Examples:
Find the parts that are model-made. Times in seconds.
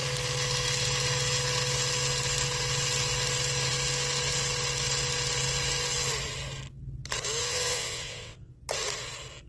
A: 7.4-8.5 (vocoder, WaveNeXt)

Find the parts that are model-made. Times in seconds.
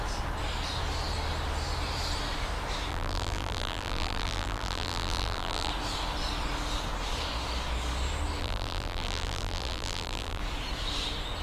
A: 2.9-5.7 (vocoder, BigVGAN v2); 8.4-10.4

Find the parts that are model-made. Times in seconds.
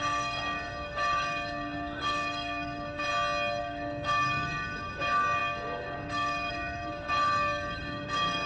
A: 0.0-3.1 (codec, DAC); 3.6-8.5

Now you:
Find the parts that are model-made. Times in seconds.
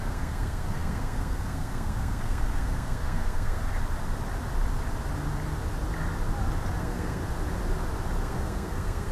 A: 0.0-3.6 (codec, SNAC); 6.8-7.2; 8.2-9.1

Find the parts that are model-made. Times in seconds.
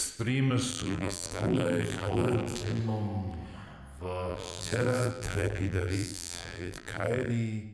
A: 0.7-2.8 (vocoder, BigVGAN v2); 4.3-7.3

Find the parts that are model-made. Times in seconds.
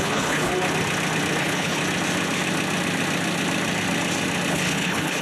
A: 0.0-0.5 (codec, HILCodec); 1.4-1.8; 4.5-5.2